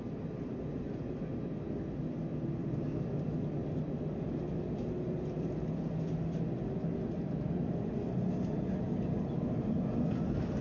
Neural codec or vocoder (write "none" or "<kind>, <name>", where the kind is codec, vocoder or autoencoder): none